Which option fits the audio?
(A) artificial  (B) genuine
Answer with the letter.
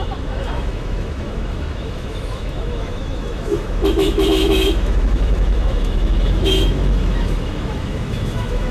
A